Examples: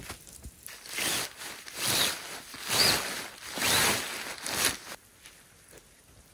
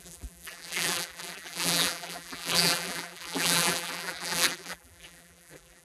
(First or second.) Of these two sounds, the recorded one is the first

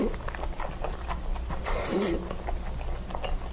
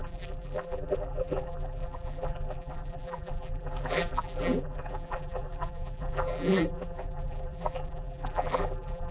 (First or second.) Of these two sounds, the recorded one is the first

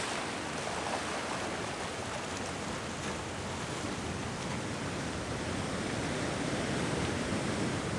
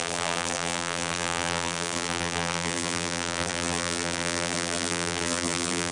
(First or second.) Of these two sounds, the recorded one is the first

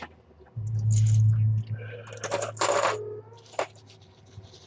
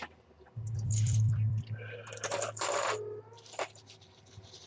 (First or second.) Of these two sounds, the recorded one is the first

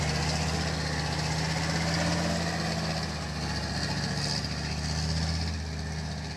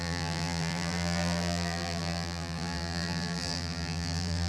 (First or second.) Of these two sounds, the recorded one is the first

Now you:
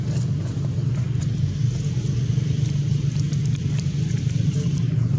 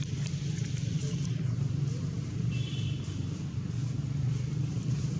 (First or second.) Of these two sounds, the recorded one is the first